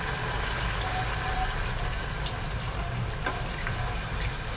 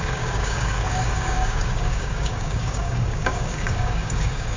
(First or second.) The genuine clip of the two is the first